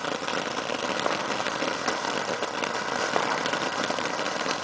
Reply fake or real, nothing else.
real